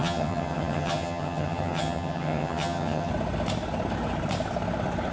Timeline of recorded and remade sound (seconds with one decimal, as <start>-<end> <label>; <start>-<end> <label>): 0.0-3.1 remade; 3.1-5.1 recorded